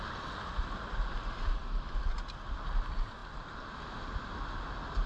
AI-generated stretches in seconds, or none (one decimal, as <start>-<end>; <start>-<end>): none